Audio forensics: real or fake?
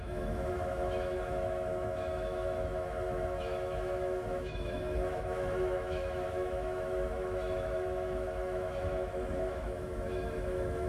fake